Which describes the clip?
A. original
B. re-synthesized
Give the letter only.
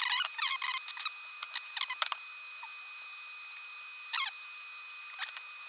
A